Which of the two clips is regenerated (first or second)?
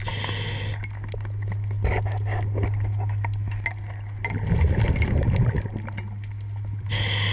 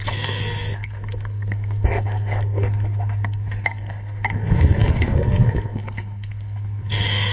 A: second